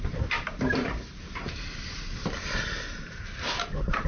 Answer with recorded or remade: recorded